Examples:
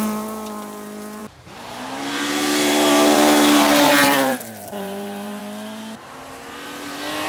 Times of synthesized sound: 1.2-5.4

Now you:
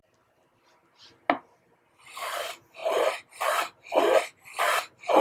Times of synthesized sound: none

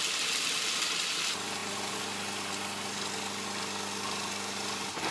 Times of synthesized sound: none

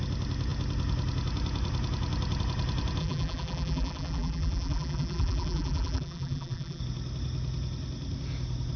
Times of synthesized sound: 3.0-6.8